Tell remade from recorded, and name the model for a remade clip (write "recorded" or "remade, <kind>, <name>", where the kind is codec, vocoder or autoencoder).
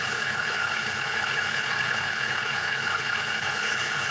remade, codec, HILCodec